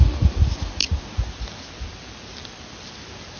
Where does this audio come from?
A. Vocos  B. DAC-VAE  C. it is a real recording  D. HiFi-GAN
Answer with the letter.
C